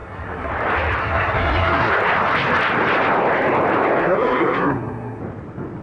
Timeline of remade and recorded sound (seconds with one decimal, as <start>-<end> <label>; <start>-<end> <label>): 0.0-0.5 remade; 0.5-1.0 recorded; 1.0-1.9 remade; 1.9-4.0 recorded; 4.0-5.2 remade; 5.2-5.8 recorded